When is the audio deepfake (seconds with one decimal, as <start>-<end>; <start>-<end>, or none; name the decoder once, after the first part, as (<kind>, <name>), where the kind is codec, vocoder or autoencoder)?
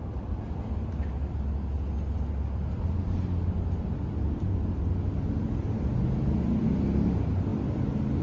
none